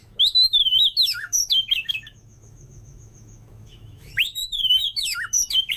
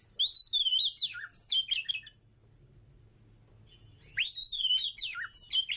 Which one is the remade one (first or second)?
first